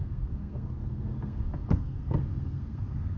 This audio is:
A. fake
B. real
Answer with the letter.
A